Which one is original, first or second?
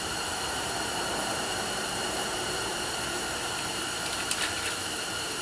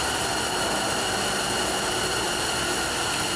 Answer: second